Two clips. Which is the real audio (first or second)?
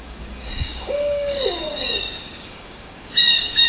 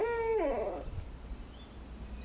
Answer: second